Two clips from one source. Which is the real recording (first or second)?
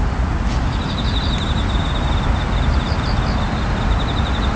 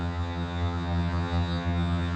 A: first